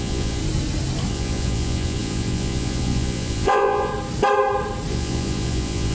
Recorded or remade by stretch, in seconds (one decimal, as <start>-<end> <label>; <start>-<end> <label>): 0.0-0.4 remade; 0.4-1.1 recorded; 1.1-3.9 remade; 3.9-4.9 recorded; 4.9-5.9 remade